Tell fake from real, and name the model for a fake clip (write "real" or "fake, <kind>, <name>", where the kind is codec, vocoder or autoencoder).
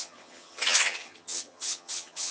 fake, vocoder, HiFi-GAN